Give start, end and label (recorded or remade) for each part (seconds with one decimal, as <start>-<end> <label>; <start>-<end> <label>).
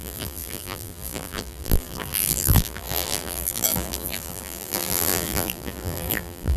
0.0-6.6 remade